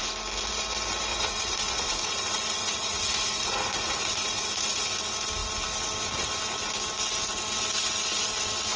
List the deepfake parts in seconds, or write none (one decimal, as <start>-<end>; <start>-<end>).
1.1-4.8